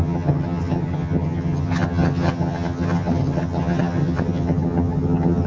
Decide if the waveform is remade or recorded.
remade